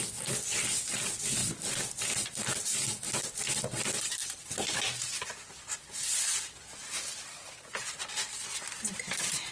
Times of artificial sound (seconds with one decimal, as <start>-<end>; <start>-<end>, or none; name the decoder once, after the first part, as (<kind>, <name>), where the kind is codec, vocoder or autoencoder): 1.4-2.6 (vocoder, BigVGAN v2); 4.2-6.2; 6.8-8.8